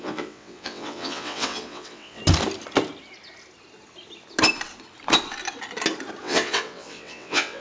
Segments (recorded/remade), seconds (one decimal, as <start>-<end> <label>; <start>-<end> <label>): 0.0-2.2 remade; 2.2-6.2 recorded; 6.2-7.6 remade